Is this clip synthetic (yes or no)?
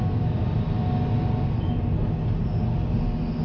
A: no